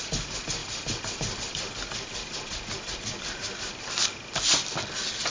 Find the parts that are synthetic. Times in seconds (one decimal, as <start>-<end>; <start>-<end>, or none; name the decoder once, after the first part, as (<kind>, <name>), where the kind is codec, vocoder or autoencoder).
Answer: none